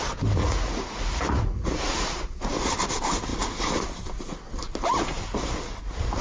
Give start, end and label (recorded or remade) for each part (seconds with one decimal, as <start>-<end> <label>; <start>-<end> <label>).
0.0-0.4 recorded; 0.4-2.5 remade; 2.5-6.2 recorded

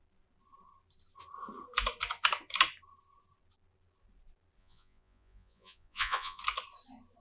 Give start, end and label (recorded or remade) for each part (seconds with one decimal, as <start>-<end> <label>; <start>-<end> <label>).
0.0-4.6 recorded; 4.6-6.4 remade; 6.4-7.2 recorded

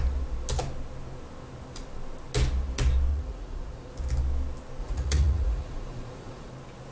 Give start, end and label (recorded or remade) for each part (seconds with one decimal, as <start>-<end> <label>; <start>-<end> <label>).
0.0-3.1 recorded; 3.1-3.9 remade; 3.9-4.8 recorded; 4.8-6.5 remade; 6.5-6.9 recorded

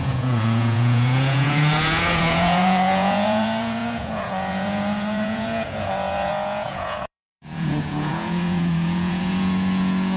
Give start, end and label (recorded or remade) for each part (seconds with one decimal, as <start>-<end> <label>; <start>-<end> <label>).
0.0-10.2 remade

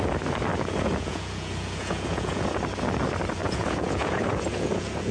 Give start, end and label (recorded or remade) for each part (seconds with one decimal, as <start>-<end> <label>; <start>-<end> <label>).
0.0-0.5 recorded; 0.5-2.4 remade; 2.4-3.4 recorded; 3.4-5.1 remade

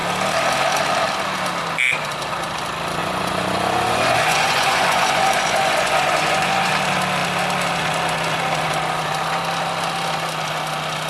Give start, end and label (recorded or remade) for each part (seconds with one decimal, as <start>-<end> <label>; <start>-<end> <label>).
0.0-3.0 recorded; 3.0-6.7 remade; 6.7-11.1 recorded